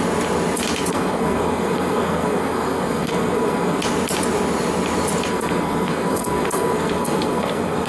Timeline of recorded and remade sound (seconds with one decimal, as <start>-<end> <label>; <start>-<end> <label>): 0.0-0.9 recorded; 0.9-3.8 remade; 3.8-5.3 recorded; 5.3-7.9 remade